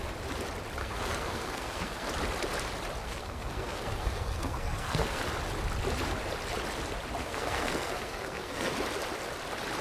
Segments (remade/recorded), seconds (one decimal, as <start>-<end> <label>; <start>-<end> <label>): 0.0-0.8 recorded; 0.8-2.1 remade; 2.1-3.0 recorded; 3.0-5.2 remade; 5.2-7.2 recorded; 7.2-8.7 remade; 8.7-9.8 recorded